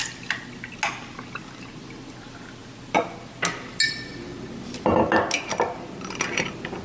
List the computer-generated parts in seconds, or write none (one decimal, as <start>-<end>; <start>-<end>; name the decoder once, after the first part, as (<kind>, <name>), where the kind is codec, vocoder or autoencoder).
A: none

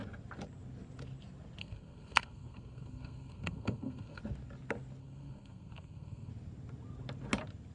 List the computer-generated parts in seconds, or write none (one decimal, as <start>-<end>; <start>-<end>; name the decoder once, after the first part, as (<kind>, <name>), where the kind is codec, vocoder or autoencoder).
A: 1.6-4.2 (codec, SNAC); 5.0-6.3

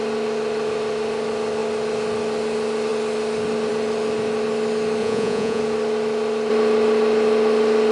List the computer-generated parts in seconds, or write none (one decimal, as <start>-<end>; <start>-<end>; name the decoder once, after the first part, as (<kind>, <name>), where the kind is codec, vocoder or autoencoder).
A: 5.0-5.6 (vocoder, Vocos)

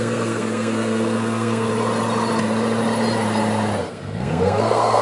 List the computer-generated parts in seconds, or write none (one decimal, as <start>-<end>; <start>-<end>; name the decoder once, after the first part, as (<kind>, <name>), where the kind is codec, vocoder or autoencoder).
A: 0.0-1.7 (codec, SNAC); 3.9-5.0